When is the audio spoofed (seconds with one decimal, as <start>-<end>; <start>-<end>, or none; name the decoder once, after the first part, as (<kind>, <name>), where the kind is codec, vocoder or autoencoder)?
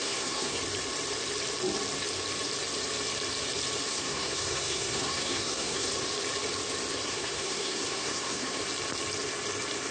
0.0-0.6 (codec, SNAC); 3.9-5.9; 7.0-8.6